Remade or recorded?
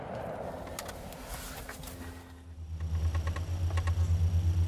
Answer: recorded